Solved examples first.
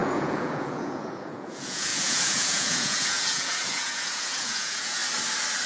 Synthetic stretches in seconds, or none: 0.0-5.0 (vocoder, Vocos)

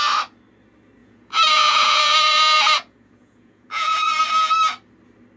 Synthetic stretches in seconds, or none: 1.0-4.2 (vocoder, Vocos)

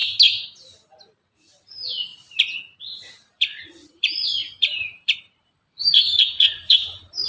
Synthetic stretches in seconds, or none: 1.0-2.1 (vocoder, BigVGAN v2); 2.8-7.3

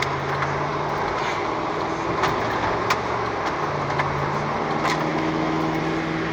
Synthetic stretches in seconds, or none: 5.1-5.8 (autoencoder, DAC-VAE)

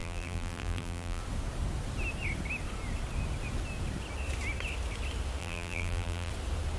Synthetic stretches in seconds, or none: 0.0-1.2 (vocoder, BigVGAN v2); 5.4-6.3

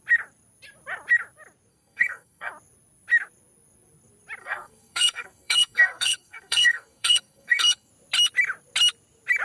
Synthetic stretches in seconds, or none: 1.7-2.5 (codec, SNAC); 4.4-7.9

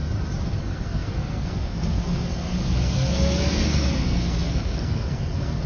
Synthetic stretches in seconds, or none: 0.6-5.7 (codec, SNAC)

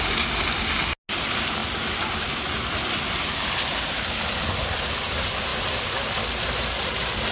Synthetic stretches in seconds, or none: none